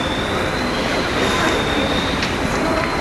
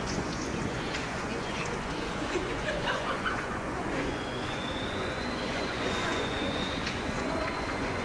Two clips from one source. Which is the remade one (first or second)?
second